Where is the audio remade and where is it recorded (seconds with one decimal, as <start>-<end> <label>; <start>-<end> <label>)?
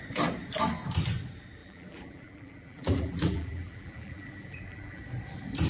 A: 0.0-1.6 recorded; 1.6-5.0 remade; 5.0-5.7 recorded